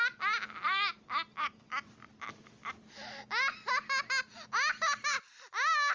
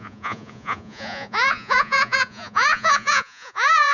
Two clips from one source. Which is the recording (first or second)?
first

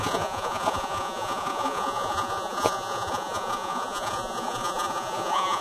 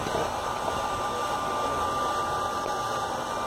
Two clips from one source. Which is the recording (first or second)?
second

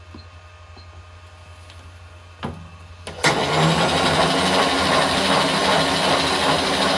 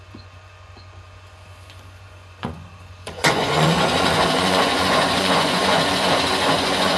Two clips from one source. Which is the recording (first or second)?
first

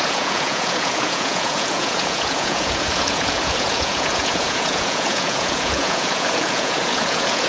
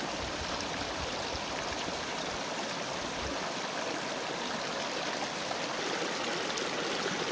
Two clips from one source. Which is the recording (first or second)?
second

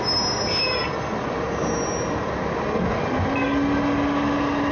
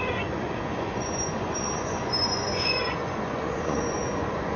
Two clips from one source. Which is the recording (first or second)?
first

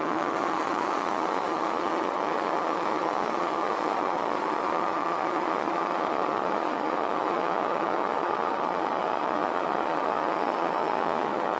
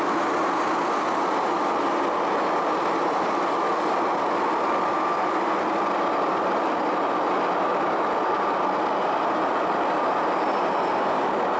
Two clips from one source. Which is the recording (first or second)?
second